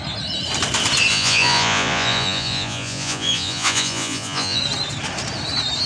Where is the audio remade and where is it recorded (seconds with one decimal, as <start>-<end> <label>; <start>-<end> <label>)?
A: 0.0-1.1 recorded; 1.1-4.6 remade; 4.6-5.9 recorded